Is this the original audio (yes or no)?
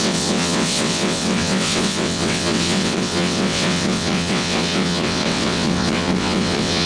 no